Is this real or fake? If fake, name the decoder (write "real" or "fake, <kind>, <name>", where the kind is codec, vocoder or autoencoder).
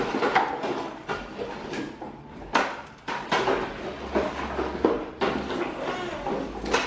real